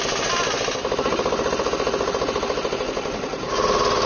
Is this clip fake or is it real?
real